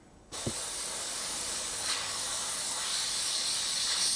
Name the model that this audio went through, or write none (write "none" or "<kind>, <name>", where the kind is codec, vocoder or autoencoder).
codec, DAC